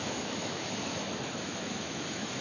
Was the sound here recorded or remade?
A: remade